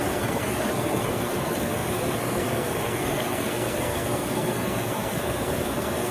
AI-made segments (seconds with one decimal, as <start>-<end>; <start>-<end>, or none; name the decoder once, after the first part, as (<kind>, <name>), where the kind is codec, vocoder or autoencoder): 0.0-6.1 (codec, SNAC)